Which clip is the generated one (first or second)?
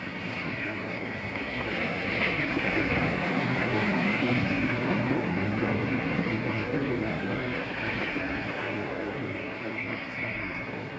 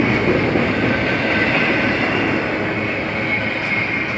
first